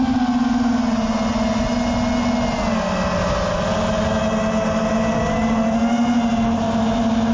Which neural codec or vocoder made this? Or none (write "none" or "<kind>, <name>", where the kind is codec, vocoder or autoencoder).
none